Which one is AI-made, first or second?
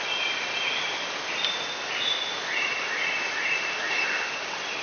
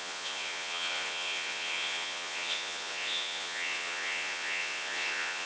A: second